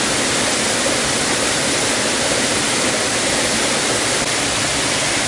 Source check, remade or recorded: recorded